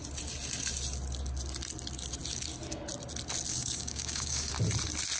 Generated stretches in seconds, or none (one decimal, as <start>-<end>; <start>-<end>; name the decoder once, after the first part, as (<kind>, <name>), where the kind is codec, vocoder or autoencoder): 3.5-4.5 (codec, DAC)